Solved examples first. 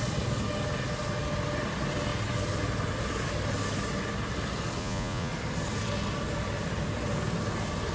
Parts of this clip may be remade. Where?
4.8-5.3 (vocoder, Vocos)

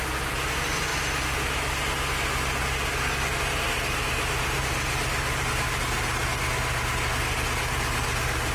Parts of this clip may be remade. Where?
none

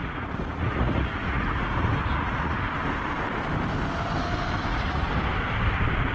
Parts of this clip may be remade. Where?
0.0-2.6 (vocoder, Vocos); 4.7-5.2